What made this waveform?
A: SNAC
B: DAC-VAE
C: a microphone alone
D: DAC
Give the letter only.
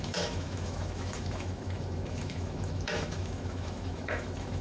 B